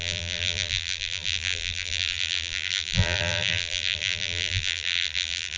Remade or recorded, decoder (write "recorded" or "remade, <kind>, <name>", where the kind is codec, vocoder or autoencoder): remade, vocoder, BigVGAN v2